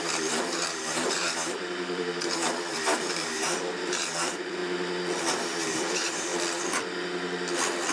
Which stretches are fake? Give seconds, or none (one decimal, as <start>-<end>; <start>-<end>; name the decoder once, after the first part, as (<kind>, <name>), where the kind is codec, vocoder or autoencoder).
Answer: 0.0-4.6 (vocoder, BigVGAN v2); 5.3-6.3